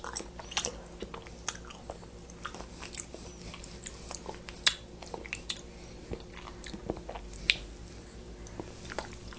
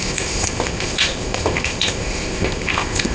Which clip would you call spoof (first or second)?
second